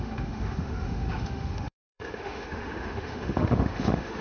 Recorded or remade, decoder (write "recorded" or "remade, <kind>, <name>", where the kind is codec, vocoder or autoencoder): remade, autoencoder, DAC-VAE